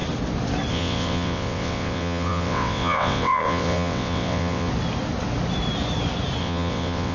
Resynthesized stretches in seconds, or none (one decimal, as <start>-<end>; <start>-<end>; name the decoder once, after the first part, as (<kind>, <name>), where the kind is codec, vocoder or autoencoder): 0.7-4.7 (vocoder, WaveNeXt); 6.4-7.1